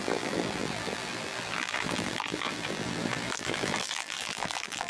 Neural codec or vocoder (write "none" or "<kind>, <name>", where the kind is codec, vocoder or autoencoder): vocoder, BigVGAN v2